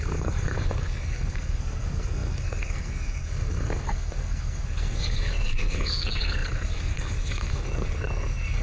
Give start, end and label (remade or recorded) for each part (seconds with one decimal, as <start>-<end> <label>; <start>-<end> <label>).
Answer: 0.0-8.6 remade